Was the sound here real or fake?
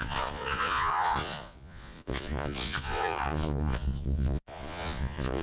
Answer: fake